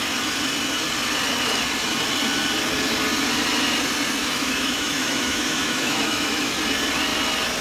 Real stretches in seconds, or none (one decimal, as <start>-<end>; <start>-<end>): 0.0-4.2; 6.5-7.6

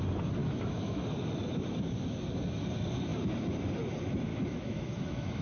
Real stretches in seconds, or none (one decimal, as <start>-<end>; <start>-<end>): 0.0-0.4; 1.0-4.3

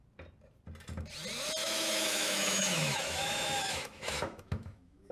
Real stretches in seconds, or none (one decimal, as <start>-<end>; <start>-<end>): 0.0-1.6

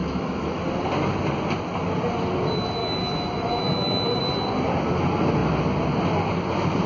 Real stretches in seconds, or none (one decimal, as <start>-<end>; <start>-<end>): 0.6-2.8; 4.2-6.9

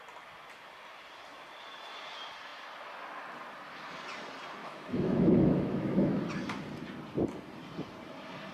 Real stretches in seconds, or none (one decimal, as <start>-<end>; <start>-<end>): 0.0-4.6; 6.2-8.5

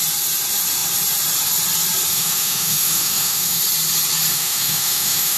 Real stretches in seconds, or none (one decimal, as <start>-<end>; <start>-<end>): 0.0-2.1; 3.6-4.3

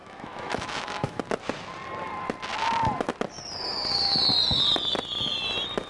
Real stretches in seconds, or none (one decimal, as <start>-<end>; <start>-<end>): 1.2-5.9